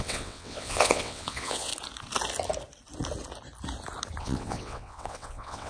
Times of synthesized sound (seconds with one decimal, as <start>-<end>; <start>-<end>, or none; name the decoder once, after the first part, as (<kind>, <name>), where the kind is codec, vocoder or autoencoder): 0.0-1.7 (vocoder, WaveNeXt); 4.2-5.7